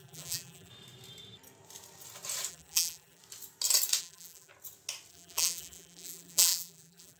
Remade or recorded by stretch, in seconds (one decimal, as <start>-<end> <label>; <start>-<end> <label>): 0.0-0.7 remade; 0.7-2.5 recorded; 2.5-3.2 remade; 3.2-4.0 recorded; 4.0-4.5 remade; 4.5-5.1 recorded; 5.1-7.2 remade